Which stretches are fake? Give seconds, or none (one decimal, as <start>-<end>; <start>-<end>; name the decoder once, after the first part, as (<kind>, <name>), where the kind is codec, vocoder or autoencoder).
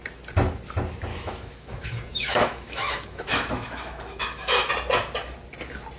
1.1-4.7 (autoencoder, DAC-VAE)